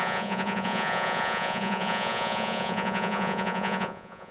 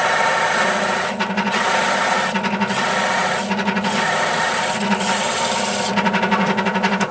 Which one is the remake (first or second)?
first